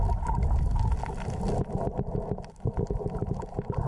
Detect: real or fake real